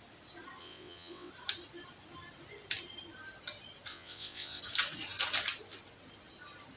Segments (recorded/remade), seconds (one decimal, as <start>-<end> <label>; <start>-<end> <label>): 0.0-0.6 recorded; 0.6-1.3 remade; 1.3-3.9 recorded; 3.9-4.6 remade; 4.6-6.8 recorded